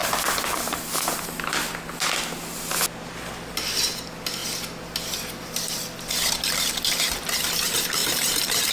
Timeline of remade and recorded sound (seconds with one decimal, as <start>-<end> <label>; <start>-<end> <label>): 0.0-8.0 recorded; 8.0-8.7 remade